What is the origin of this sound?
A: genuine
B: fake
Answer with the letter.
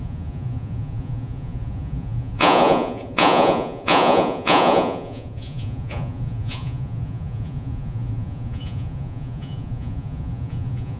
B